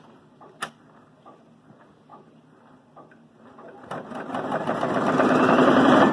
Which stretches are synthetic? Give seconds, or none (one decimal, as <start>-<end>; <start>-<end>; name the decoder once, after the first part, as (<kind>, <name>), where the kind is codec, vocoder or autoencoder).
none